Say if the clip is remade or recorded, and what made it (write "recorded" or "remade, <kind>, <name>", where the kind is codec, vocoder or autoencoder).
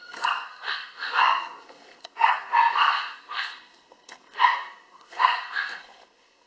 remade, codec, SNAC